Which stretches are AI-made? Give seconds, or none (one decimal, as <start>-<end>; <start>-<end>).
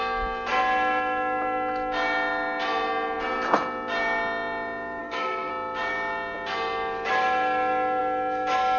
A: 5.0-5.5